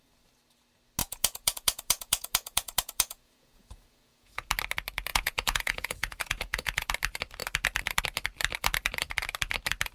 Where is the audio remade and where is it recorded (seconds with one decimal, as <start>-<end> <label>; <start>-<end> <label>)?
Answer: 0.0-1.0 recorded; 1.0-4.5 remade; 4.5-5.1 recorded; 5.1-6.9 remade; 6.9-9.9 recorded